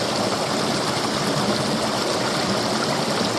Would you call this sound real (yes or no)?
yes